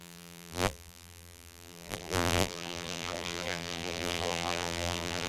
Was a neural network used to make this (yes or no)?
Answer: yes